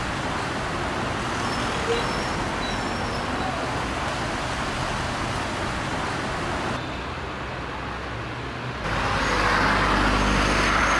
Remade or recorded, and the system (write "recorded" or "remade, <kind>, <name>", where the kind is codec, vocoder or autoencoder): recorded